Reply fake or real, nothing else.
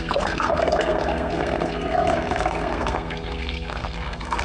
fake